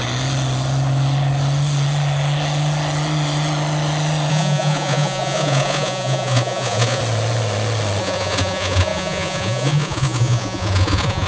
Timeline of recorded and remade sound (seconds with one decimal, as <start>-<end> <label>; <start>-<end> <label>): 0.0-4.3 recorded; 4.3-7.0 remade; 7.0-8.0 recorded; 8.0-11.3 remade